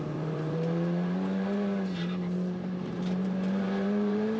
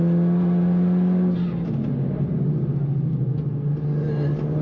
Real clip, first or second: second